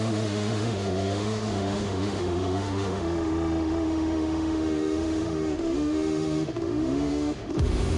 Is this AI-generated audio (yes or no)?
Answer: yes